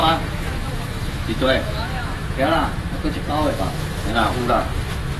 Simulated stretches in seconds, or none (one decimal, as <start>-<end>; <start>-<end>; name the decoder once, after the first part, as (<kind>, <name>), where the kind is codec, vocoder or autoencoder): 0.0-5.2 (autoencoder, DAC-VAE)

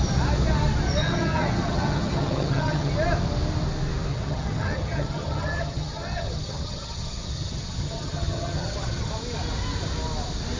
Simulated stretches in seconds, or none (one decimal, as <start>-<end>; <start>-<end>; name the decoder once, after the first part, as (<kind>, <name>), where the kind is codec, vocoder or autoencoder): 1.0-2.9 (vocoder, HiFi-GAN); 4.1-9.1

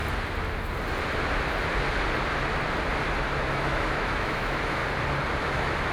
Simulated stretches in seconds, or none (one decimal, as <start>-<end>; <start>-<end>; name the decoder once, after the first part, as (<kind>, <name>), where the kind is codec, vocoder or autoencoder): 3.5-4.8 (autoencoder, DAC-VAE); 5.4-5.9

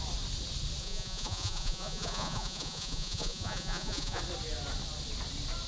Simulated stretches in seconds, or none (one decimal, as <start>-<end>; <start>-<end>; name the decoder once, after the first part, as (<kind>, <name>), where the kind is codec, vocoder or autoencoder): 0.8-4.2 (vocoder, Vocos)

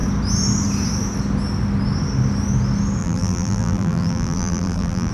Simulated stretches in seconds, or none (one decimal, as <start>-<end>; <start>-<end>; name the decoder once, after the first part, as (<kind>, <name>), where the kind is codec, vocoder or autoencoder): 3.0-5.1 (vocoder, BigVGAN v2)

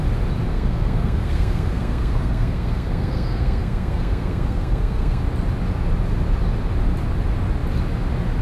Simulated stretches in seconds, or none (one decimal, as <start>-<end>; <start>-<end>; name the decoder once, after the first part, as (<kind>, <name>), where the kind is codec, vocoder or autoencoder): 0.5-5.2 (codec, SNAC)